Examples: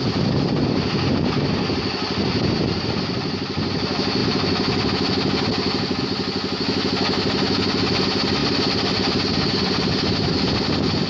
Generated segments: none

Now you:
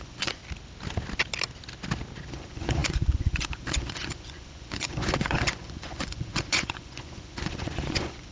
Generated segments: 0.0-0.4 (vocoder, Vocos); 2.3-8.3

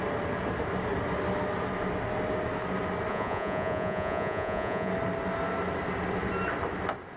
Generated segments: 3.1-4.9 (vocoder, Vocos)

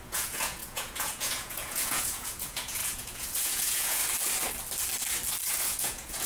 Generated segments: 0.0-4.0 (vocoder, Vocos); 5.5-6.3

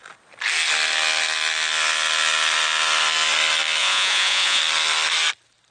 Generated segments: 3.8-4.6 (vocoder, Vocos)

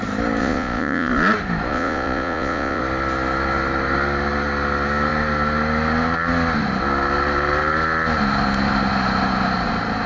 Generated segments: 0.4-1.1 (vocoder, Vocos); 1.7-2.8

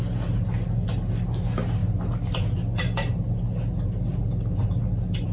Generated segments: none